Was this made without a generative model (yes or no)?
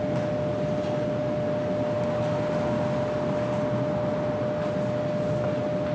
yes